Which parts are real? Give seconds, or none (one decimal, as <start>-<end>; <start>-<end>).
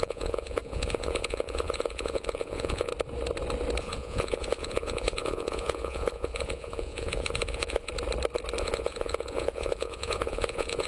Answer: 2.9-3.8; 7.9-8.6